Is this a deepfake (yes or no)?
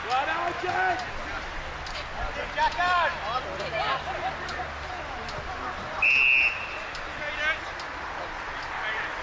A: no